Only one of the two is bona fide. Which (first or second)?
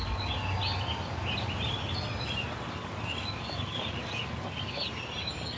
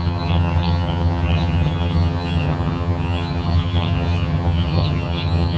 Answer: first